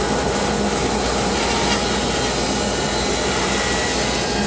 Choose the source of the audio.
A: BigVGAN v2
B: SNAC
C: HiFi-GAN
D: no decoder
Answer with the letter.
D